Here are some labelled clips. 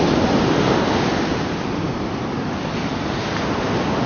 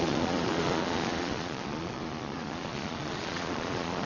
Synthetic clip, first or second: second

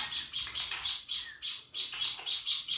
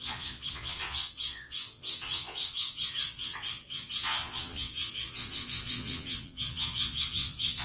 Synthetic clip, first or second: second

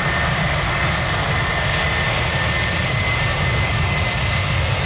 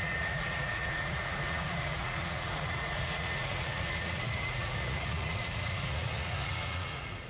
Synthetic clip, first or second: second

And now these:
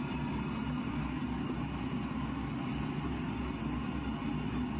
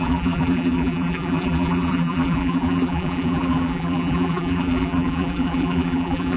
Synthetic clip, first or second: second